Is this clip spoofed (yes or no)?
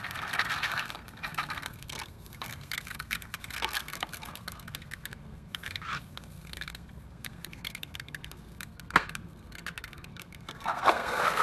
yes